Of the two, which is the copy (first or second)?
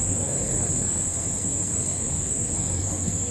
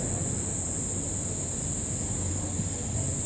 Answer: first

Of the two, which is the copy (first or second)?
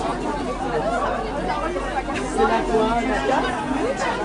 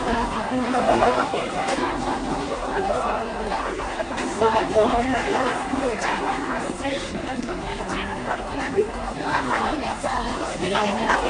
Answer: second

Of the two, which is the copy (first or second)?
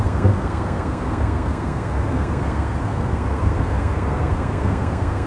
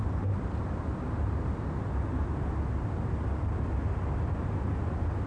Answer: first